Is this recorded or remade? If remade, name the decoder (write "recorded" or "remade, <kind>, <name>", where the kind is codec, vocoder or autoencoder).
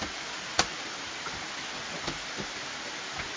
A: recorded